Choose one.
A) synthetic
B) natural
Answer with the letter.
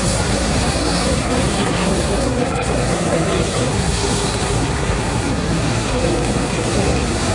A